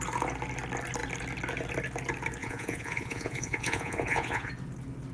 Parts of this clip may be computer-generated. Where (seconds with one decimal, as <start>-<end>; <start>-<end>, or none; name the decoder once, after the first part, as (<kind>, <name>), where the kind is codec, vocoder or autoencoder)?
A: 2.4-4.5 (vocoder, Vocos)